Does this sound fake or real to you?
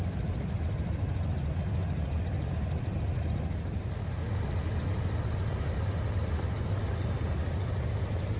real